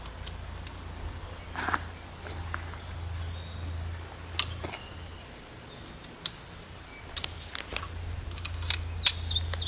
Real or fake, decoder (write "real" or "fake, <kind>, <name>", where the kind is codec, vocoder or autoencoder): real